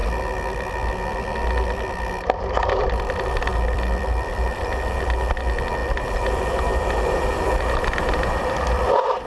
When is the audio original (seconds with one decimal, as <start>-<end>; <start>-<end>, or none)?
0.0-3.5; 5.0-5.8